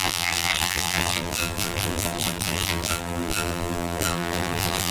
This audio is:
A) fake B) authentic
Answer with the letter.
A